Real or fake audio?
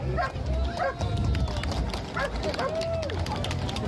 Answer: real